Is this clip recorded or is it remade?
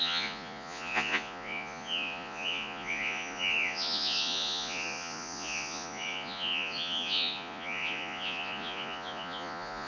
remade